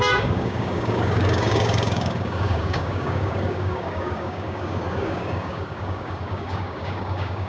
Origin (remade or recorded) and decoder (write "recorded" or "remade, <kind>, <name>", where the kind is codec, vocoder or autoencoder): remade, codec, DAC